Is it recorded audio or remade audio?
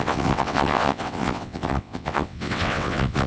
remade